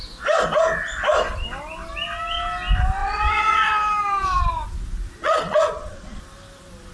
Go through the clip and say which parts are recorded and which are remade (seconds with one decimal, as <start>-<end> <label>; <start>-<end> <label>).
0.0-3.0 recorded; 3.0-3.7 remade; 3.7-5.2 recorded; 5.2-6.2 remade; 6.2-6.9 recorded